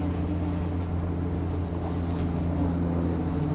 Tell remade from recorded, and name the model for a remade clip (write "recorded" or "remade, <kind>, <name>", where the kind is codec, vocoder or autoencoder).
recorded